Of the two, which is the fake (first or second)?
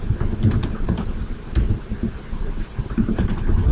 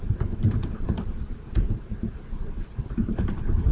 second